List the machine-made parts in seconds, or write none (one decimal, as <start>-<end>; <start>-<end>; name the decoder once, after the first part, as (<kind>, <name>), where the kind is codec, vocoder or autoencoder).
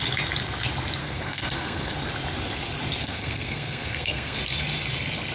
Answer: 1.0-2.1 (codec, SNAC); 3.0-4.4